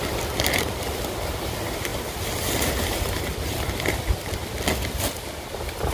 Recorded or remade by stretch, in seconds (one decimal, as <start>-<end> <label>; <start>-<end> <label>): 0.0-5.9 recorded